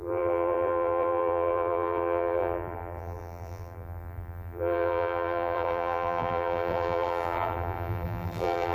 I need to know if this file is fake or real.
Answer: fake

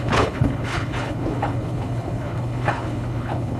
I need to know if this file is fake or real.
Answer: fake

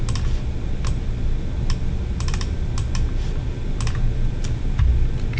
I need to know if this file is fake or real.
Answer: real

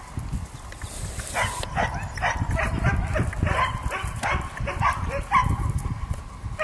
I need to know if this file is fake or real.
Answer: real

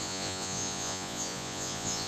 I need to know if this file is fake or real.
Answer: fake